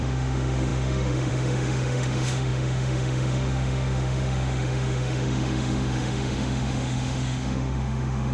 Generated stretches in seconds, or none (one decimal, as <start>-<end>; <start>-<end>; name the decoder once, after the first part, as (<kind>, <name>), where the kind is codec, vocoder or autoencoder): 0.0-8.3 (autoencoder, DAC-VAE)